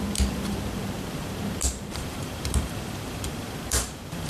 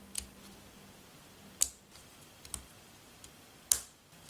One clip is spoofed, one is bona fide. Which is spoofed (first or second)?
first